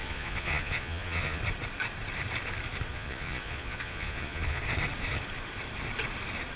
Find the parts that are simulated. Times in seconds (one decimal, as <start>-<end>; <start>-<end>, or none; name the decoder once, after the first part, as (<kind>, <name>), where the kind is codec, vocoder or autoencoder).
0.0-1.4 (vocoder, Vocos); 2.9-4.6